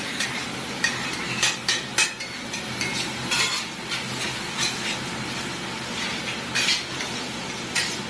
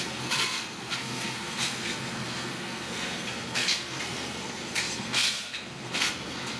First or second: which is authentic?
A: first